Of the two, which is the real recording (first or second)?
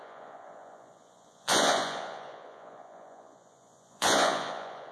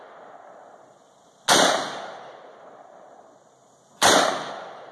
second